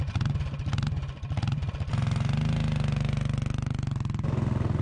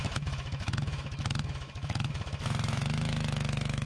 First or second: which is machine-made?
second